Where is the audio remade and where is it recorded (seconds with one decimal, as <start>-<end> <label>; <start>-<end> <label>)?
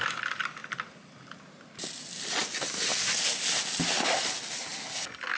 0.0-5.4 recorded